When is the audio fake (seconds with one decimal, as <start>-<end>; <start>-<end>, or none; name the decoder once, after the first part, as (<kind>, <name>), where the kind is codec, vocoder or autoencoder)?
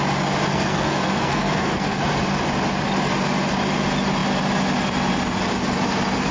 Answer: 0.5-2.0 (codec, SNAC)